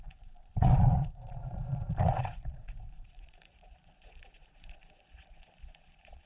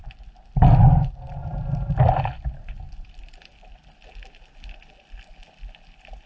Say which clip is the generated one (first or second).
first